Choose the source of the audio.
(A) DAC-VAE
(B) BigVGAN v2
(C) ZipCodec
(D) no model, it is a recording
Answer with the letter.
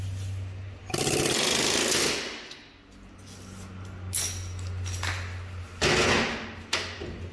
D